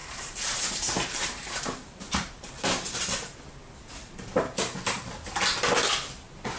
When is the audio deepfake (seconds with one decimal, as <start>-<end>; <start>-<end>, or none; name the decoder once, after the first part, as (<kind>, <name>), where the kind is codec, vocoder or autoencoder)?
0.0-2.5 (vocoder, BigVGAN v2); 3.6-5.4